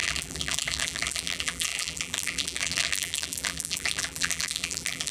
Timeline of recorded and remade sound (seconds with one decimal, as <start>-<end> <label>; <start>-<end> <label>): 0.0-5.1 remade